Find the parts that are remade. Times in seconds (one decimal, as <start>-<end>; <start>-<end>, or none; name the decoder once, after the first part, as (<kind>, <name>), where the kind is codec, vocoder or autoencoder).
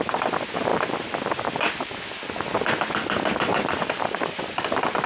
none